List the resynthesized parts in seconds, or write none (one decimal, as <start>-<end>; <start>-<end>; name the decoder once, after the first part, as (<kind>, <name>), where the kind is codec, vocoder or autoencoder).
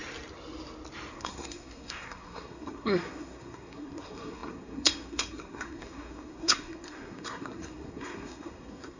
1.1-9.0 (codec, SNAC)